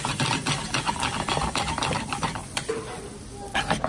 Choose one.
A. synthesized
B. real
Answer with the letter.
B